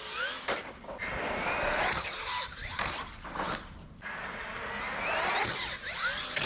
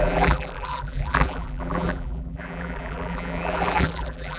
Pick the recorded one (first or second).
first